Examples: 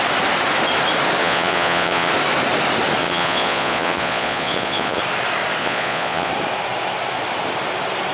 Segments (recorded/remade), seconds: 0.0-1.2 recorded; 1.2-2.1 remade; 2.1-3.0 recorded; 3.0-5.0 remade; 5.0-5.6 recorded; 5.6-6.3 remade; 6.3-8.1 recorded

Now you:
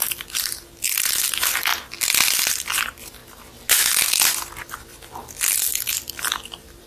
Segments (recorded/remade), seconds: 0.0-1.7 remade; 1.7-2.3 recorded; 2.3-3.2 remade; 3.2-4.7 recorded; 4.7-6.9 remade